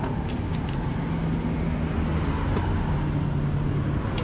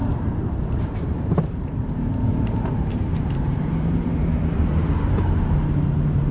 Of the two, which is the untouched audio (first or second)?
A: first